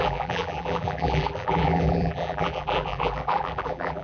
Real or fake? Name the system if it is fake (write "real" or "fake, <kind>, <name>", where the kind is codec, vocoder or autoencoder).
fake, vocoder, BigVGAN v2